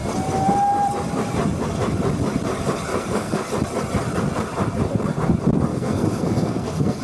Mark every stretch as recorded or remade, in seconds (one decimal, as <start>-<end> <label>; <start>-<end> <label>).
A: 0.0-2.9 recorded; 2.9-3.5 remade; 3.5-5.7 recorded; 5.7-7.0 remade